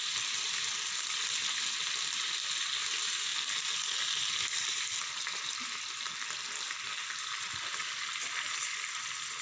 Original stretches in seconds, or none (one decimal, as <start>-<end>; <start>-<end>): 0.0-9.4